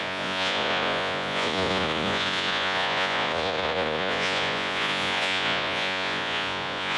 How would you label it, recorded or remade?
remade